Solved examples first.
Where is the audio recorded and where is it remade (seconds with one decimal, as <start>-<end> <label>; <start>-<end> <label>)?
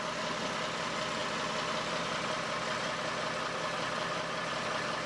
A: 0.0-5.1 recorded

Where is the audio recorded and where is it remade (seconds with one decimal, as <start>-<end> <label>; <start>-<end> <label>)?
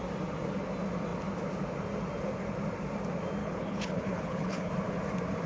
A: 0.0-3.4 recorded; 3.4-4.7 remade; 4.7-5.5 recorded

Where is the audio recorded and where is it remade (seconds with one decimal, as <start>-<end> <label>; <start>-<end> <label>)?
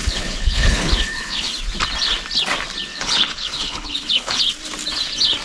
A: 0.0-1.5 remade; 1.5-2.9 recorded; 2.9-4.4 remade; 4.4-5.4 recorded